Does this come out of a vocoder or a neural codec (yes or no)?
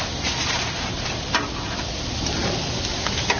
no